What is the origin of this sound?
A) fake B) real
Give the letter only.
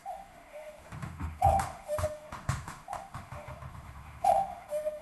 A